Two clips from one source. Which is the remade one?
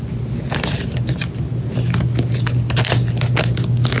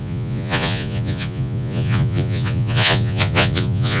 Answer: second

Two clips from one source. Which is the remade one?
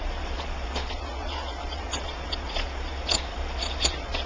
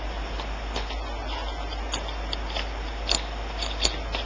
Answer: first